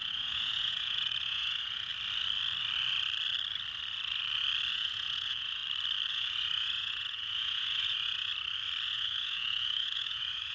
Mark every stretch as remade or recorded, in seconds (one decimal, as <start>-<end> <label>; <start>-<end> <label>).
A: 0.0-1.9 remade; 1.9-4.7 recorded; 4.7-5.6 remade; 5.6-6.1 recorded; 6.1-8.3 remade; 8.3-8.9 recorded; 8.9-10.5 remade